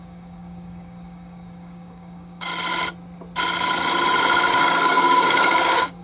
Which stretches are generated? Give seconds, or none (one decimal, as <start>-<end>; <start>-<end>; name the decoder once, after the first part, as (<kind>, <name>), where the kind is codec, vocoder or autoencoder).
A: 0.0-2.5 (codec, DAC); 4.5-6.0